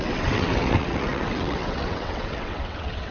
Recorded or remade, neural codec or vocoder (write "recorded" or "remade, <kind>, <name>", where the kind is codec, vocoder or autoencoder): remade, vocoder, WaveNeXt